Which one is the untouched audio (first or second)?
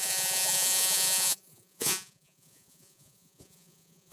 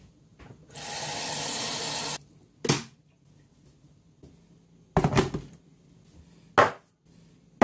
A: second